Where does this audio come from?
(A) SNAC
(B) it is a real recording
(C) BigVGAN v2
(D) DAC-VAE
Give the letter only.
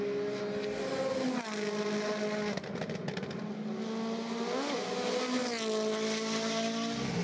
B